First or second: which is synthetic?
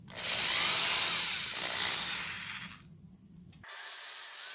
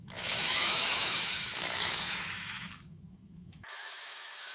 second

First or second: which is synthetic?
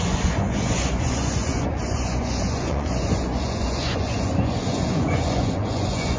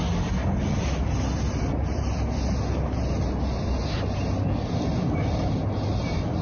first